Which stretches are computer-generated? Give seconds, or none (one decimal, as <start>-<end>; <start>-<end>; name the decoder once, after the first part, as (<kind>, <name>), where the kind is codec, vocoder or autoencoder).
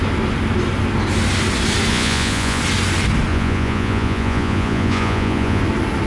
1.9-2.6 (vocoder, Vocos); 3.3-5.6